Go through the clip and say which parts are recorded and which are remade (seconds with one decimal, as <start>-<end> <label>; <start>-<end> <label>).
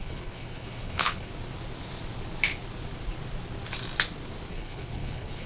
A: 0.0-1.3 remade; 1.3-4.5 recorded; 4.5-5.5 remade